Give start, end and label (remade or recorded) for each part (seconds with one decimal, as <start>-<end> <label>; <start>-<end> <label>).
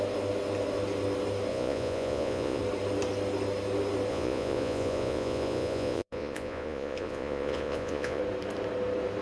0.0-1.5 recorded; 1.5-2.6 remade; 2.6-4.1 recorded; 4.1-8.2 remade; 8.2-9.2 recorded